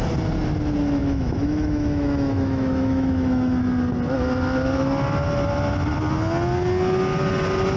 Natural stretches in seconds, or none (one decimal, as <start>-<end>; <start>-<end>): 0.0-1.0; 3.6-7.8